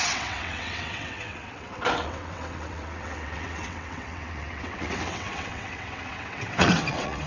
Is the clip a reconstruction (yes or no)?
yes